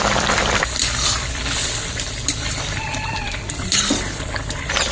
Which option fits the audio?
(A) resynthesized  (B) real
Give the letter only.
A